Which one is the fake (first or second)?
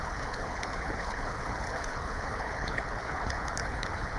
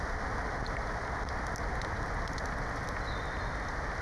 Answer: first